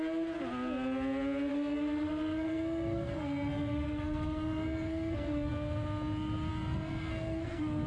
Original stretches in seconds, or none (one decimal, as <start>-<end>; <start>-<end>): 0.0-1.5; 5.5-6.5